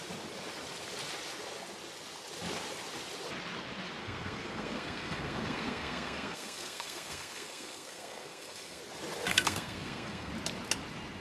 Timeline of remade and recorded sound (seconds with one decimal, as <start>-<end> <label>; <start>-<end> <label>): 0.0-4.0 recorded; 4.0-8.8 remade; 8.8-9.3 recorded; 9.3-10.3 remade; 10.3-11.2 recorded